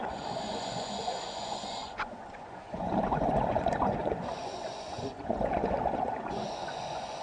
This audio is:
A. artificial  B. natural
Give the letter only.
A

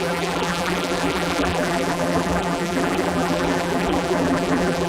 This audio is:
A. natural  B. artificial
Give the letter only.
B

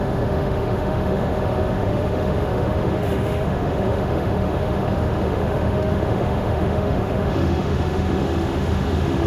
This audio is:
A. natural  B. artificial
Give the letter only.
B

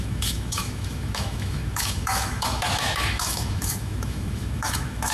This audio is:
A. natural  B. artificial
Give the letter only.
B